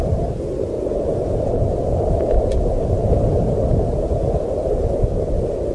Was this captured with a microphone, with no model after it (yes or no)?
yes